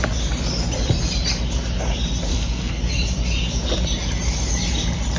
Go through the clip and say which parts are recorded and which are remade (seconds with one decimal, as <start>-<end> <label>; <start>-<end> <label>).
0.0-2.3 recorded; 2.3-2.8 remade; 2.8-5.2 recorded